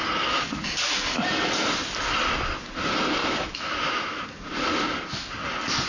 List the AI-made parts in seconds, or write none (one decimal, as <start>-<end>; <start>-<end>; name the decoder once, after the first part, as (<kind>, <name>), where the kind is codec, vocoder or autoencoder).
3.2-4.2 (autoencoder, DAC-VAE)